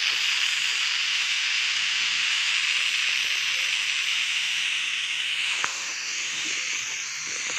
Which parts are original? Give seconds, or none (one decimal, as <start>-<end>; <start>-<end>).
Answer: 0.0-1.0; 2.5-4.1; 6.5-7.6